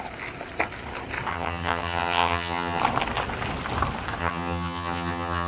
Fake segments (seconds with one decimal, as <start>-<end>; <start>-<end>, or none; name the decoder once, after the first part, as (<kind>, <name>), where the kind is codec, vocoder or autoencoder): 1.3-2.8 (vocoder, HiFi-GAN); 4.2-5.5